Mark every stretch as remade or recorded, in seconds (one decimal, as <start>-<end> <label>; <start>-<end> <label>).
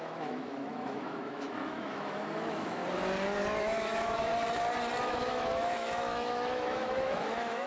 0.0-2.8 remade; 2.8-3.6 recorded; 3.6-4.3 remade; 4.3-5.0 recorded; 5.0-7.7 remade